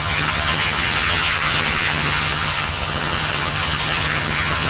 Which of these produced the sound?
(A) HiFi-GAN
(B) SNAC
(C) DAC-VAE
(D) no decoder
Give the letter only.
A